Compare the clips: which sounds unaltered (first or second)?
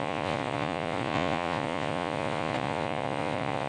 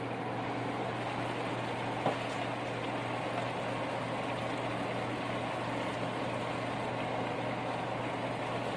second